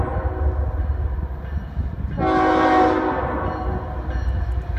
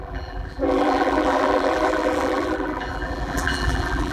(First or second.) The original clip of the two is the first